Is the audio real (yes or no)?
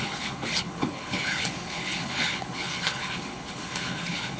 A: no